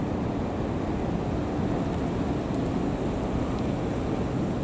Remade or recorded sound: recorded